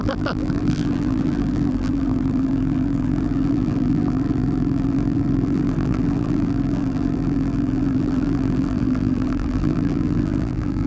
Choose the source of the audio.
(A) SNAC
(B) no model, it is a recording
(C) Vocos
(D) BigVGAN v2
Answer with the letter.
D